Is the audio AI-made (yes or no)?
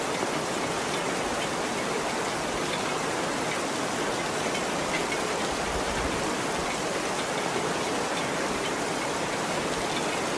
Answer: no